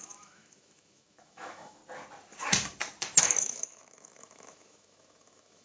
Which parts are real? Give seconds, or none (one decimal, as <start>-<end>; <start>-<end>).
1.8-3.2